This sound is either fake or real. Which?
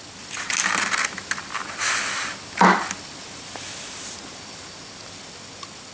real